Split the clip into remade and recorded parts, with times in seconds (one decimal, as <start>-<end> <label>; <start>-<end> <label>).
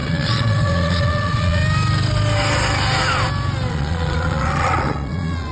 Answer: 0.0-1.6 remade; 1.6-3.7 recorded; 3.7-5.5 remade